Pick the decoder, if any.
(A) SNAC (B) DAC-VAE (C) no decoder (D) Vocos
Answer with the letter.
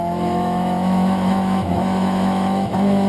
B